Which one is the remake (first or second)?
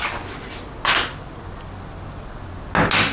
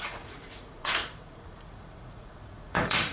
second